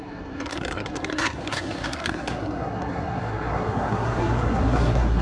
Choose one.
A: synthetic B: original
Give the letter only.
A